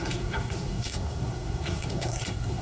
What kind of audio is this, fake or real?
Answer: fake